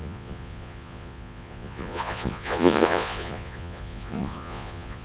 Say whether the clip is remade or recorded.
remade